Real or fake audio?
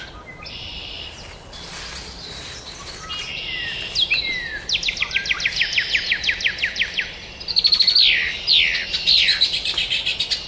real